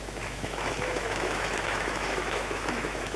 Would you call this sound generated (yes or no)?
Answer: yes